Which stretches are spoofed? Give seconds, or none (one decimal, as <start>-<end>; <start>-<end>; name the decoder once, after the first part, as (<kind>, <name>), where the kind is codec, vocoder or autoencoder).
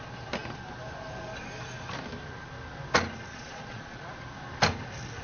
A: 3.3-4.0 (vocoder, Vocos)